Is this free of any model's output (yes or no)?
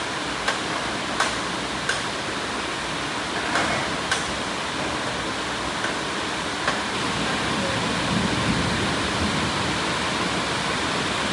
yes